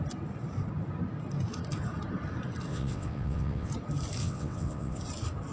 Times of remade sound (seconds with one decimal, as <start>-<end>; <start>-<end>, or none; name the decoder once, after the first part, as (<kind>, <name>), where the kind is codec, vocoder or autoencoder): 2.7-3.7 (vocoder, WaveNeXt); 4.2-5.0